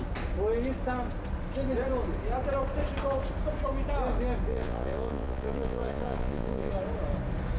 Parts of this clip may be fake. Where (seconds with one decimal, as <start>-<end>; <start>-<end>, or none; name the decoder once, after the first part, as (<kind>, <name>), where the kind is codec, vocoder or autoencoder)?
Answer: 4.5-6.7 (vocoder, Vocos)